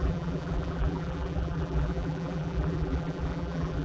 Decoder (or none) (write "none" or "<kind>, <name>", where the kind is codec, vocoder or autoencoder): vocoder, BigVGAN v2